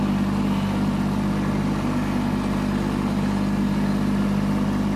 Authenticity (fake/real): real